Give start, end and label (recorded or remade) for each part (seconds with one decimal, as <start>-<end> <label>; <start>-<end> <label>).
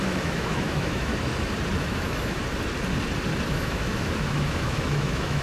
0.0-1.1 remade; 1.1-1.8 recorded; 1.8-2.4 remade; 2.4-3.5 recorded; 3.5-5.4 remade